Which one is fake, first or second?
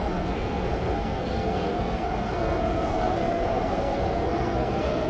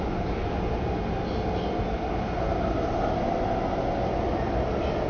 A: first